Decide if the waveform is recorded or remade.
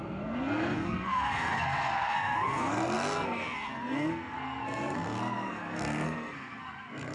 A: remade